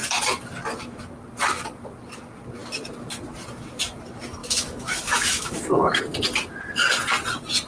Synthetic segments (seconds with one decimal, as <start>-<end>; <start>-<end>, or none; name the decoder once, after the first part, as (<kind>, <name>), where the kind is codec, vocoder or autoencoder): 4.4-6.0 (autoencoder, DAC-VAE)